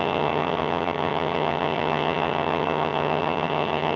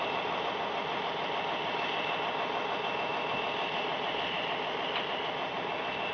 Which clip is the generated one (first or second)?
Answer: first